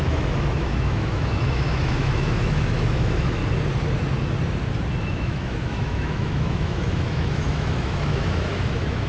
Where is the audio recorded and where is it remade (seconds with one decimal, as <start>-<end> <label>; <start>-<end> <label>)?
0.0-3.4 remade; 3.4-5.0 recorded; 5.0-9.1 remade